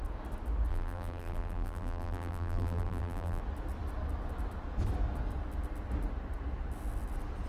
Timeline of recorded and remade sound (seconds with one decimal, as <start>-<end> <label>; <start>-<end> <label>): 0.0-0.7 recorded; 0.7-3.4 remade; 3.4-7.5 recorded